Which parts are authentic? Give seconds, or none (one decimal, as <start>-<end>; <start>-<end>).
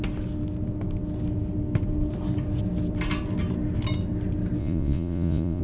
0.0-4.6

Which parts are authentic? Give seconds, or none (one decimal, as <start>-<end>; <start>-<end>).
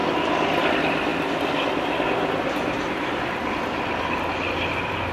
0.0-5.1